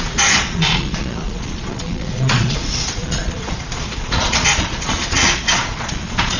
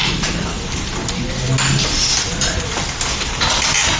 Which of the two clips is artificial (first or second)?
first